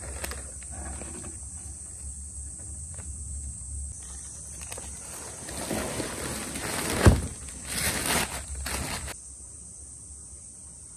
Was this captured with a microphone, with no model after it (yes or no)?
yes